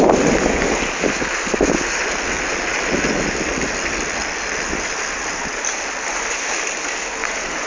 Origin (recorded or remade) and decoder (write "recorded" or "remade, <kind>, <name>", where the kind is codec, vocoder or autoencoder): recorded